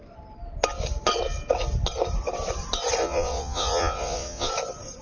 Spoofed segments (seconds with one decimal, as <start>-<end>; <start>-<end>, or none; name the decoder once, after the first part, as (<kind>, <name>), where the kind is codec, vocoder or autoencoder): 3.0-4.5 (vocoder, Vocos)